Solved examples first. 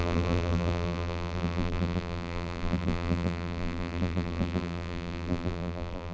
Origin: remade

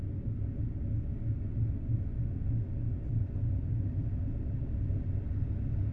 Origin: recorded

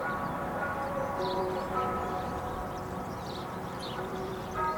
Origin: remade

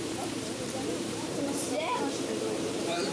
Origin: remade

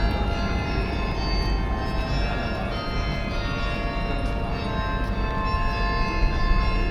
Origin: recorded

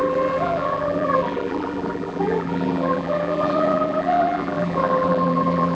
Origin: remade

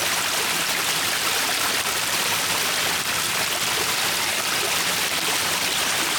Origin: remade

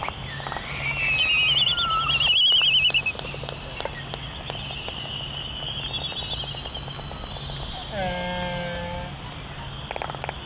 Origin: recorded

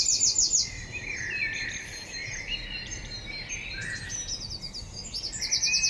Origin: recorded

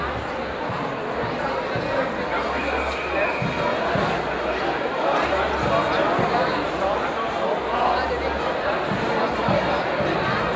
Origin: recorded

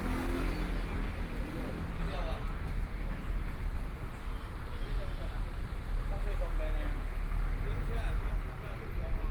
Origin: recorded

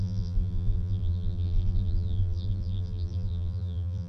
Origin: remade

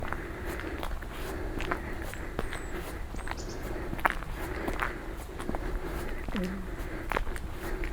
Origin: recorded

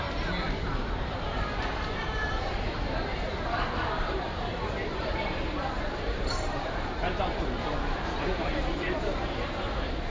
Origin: remade